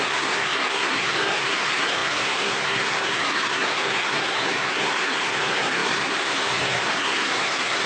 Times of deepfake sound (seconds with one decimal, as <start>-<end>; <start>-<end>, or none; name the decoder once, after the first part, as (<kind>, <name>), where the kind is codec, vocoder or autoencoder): 0.0-7.9 (codec, SNAC)